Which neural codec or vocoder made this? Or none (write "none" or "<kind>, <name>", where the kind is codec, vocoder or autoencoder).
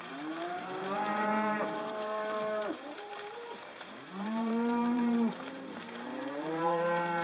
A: vocoder, BigVGAN v2